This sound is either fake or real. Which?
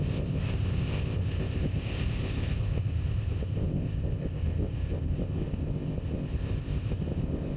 fake